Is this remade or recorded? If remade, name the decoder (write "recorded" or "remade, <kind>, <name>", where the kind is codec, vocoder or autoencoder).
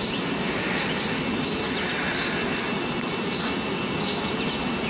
recorded